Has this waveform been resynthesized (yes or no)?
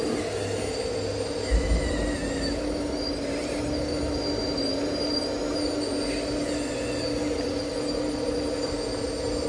no